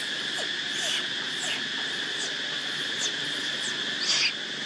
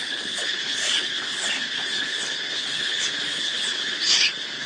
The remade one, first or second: second